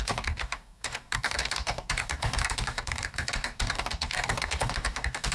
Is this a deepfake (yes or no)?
yes